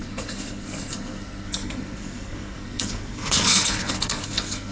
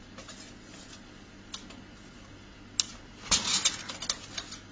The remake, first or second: first